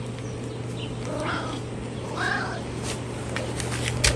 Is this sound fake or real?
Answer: real